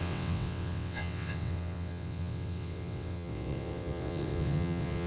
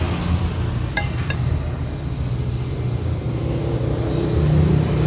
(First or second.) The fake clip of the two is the first